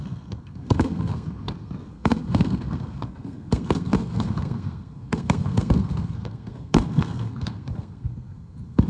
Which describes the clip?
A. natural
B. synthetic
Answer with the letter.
B